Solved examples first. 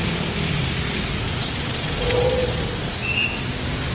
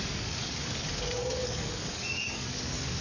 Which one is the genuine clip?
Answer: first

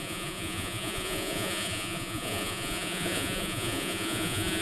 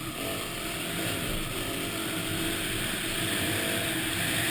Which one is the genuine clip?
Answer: second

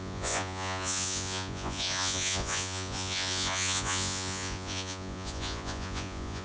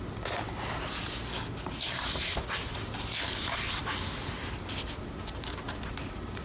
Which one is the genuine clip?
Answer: second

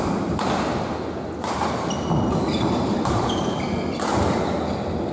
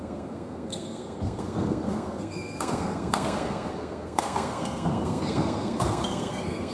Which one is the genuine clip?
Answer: first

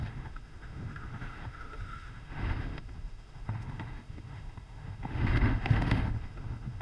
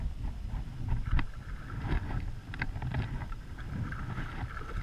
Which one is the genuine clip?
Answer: second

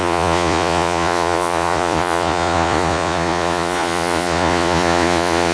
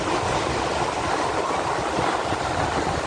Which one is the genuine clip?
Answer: second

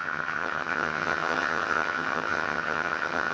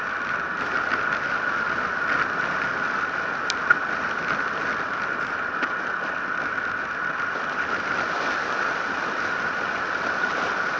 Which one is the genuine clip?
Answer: second